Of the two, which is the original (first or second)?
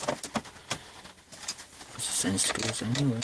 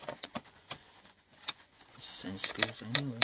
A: first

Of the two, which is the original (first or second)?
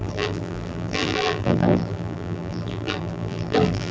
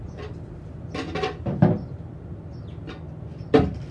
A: second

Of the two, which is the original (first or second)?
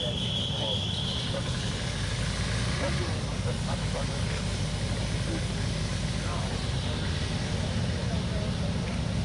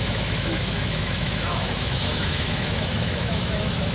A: first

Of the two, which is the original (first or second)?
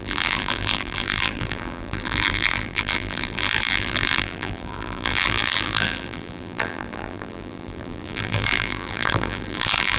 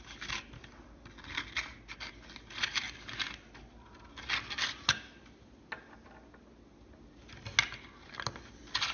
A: second